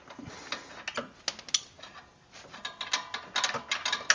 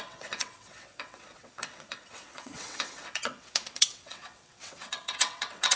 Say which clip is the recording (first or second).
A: first